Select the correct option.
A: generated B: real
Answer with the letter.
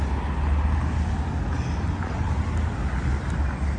B